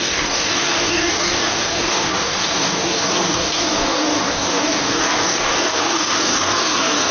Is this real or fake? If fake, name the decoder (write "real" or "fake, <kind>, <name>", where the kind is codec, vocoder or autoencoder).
fake, codec, DAC